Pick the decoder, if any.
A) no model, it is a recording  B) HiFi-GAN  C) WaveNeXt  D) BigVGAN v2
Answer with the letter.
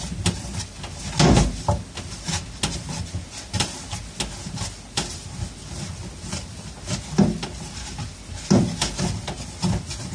A